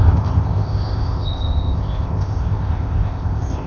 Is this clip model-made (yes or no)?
yes